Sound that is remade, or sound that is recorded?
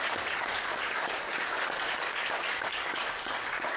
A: remade